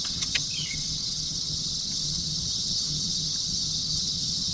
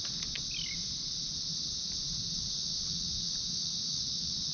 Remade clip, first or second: first